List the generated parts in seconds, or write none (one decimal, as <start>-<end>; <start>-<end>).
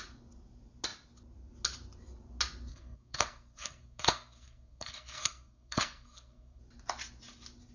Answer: 2.7-6.6